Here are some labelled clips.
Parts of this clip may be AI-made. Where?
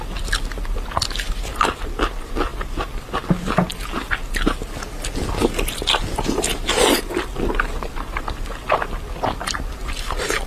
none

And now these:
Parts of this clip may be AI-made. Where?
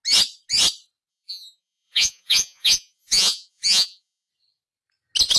1.1-4.3 (vocoder, Vocos)